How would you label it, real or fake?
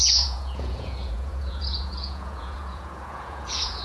fake